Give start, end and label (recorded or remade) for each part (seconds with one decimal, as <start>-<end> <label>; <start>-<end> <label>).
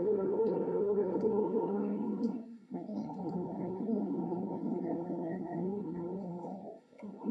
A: 0.0-7.3 remade